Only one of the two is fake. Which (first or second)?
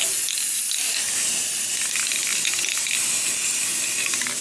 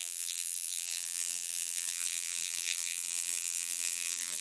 second